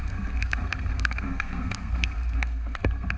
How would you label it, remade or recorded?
remade